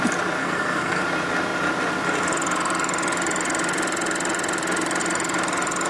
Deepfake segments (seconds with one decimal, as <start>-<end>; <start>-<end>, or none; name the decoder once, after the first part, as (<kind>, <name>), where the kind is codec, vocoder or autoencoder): 0.4-1.0 (codec, SNAC)